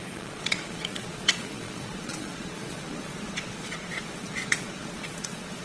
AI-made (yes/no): yes